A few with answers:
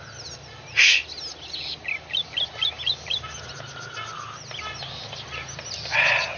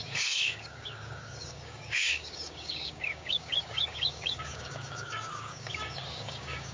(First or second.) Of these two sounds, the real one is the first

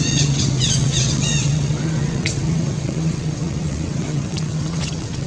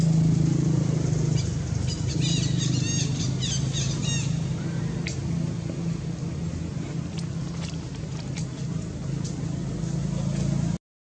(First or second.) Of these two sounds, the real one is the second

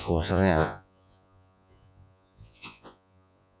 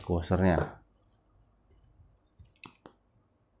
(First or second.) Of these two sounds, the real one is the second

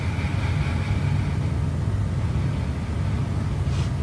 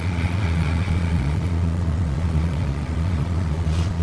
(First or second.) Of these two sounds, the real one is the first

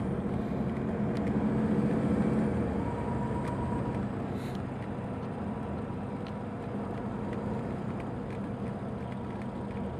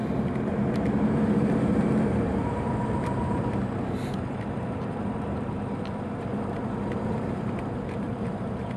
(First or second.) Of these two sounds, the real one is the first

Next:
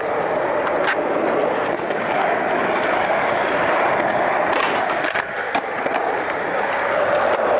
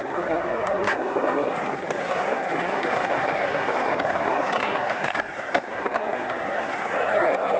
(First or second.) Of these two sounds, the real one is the first